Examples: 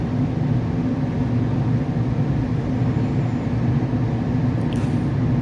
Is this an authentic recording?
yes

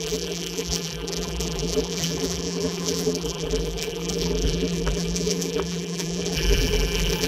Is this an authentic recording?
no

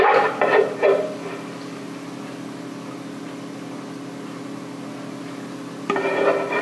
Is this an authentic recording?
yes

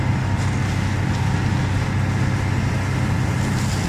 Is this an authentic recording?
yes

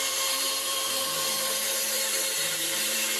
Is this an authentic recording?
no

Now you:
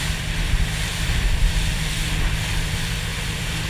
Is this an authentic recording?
no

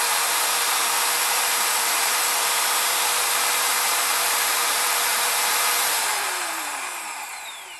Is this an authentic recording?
no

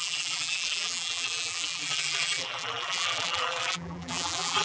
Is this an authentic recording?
no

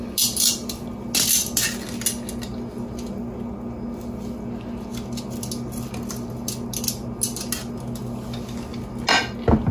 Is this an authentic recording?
yes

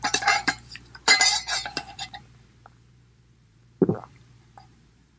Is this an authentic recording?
no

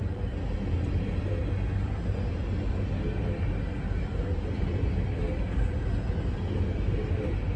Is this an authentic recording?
yes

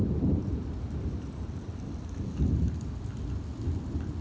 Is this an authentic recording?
no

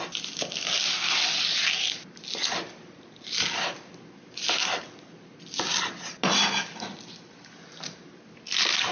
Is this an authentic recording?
yes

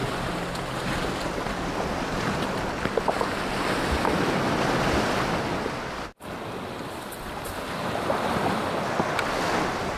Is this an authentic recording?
yes